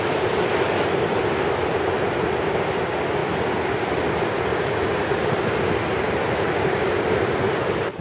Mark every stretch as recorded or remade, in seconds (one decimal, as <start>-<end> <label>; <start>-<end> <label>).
0.0-8.0 recorded